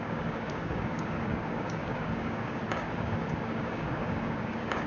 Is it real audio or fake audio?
fake